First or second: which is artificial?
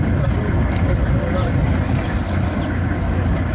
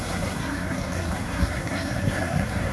second